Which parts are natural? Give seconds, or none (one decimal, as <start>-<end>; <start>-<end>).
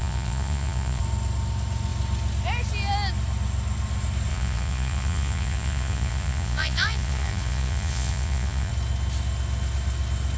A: 1.0-4.3; 8.7-10.4